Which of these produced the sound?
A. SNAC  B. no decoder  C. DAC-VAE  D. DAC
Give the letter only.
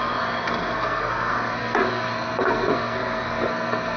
A